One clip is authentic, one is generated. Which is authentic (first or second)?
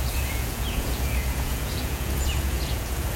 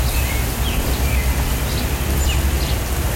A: second